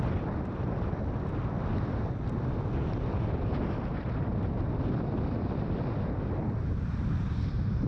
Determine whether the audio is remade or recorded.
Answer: recorded